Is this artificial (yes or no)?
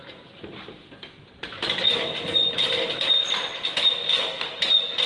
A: no